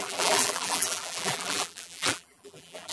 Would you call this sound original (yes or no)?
no